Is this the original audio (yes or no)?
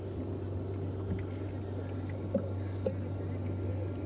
yes